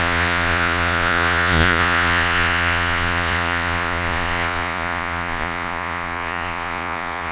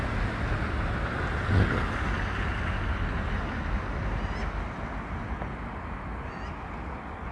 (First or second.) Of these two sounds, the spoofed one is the first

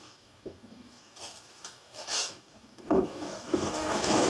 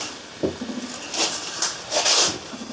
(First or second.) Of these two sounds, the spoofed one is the first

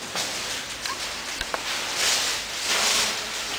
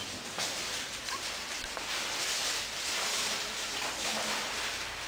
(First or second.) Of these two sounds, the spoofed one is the second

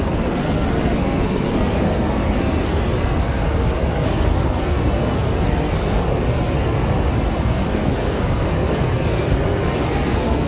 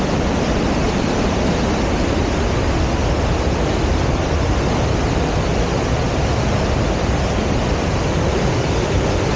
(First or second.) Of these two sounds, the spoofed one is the first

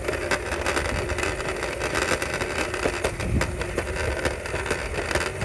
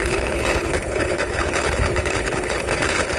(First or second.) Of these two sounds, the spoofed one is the second